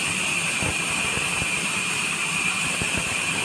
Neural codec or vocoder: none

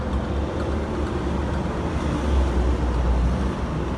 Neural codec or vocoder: none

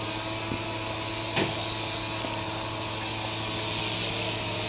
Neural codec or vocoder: none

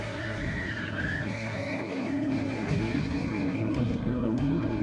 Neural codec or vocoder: codec, SNAC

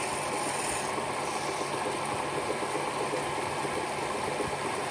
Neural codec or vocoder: none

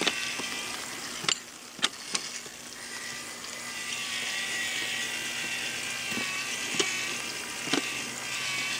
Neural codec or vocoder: none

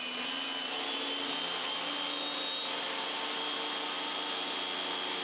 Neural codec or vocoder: none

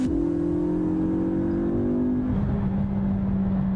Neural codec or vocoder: none